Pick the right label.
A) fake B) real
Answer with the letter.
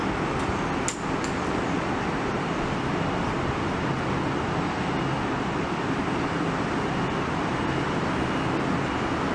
B